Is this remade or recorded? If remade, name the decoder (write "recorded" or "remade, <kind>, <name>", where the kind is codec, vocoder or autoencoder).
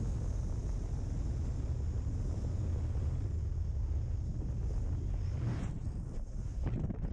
recorded